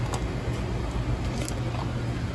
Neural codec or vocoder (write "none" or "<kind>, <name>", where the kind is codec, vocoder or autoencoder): none